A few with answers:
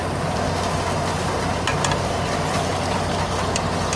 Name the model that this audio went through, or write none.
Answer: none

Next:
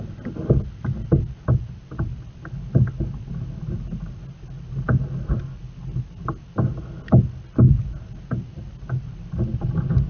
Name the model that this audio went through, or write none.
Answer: none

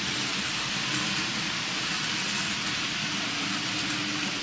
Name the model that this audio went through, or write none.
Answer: none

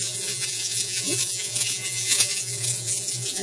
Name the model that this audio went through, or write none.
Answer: vocoder, Vocos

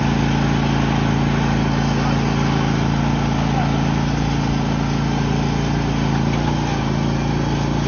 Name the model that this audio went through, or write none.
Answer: none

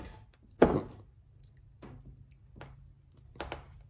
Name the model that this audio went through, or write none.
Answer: none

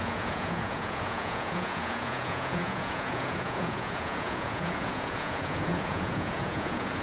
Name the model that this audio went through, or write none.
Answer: vocoder, Vocos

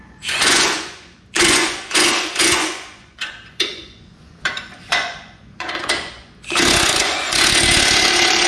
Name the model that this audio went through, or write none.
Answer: vocoder, Vocos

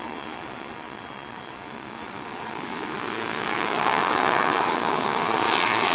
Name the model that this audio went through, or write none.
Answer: vocoder, Vocos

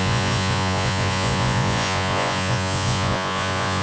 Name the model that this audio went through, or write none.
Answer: vocoder, Vocos